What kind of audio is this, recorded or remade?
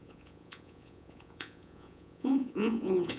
remade